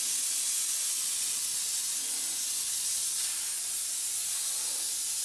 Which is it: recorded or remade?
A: recorded